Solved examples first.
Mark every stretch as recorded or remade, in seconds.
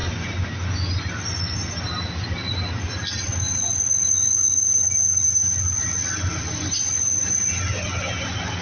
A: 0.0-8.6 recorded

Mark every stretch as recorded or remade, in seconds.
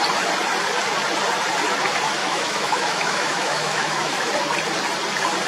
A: 0.0-2.2 recorded; 2.2-4.3 remade; 4.3-5.5 recorded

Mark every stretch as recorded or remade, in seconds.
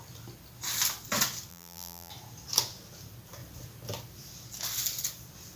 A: 0.0-1.5 recorded; 1.5-2.1 remade; 2.1-5.6 recorded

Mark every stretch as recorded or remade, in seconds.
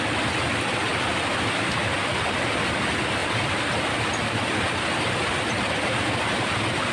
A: 0.0-6.9 recorded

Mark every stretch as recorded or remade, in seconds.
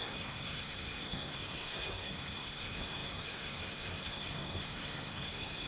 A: 0.0-5.7 remade